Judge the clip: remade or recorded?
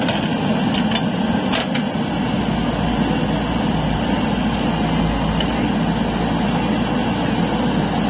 recorded